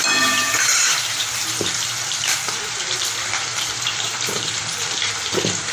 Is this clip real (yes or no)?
no